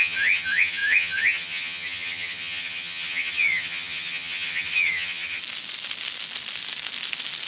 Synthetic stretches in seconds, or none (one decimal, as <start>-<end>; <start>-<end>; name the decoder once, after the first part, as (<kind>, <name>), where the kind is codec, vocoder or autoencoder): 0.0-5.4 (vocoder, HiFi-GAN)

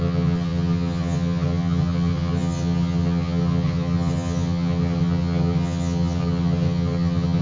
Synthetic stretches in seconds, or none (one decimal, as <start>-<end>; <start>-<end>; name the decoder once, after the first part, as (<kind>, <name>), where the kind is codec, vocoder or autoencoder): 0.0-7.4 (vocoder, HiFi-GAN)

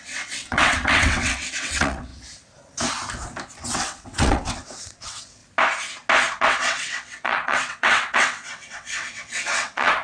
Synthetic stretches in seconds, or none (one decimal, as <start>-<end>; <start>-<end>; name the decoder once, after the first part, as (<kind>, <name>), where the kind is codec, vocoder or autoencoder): 0.0-2.1 (vocoder, WaveNeXt); 3.7-5.4; 6.4-10.0

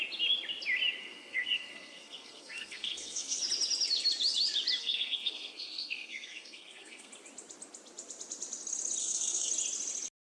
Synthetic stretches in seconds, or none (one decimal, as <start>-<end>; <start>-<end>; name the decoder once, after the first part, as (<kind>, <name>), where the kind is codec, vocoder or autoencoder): 1.0-3.4 (codec, SNAC); 4.8-7.1; 9.0-9.5